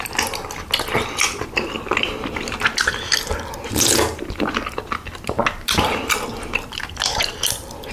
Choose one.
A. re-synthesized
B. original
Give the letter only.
B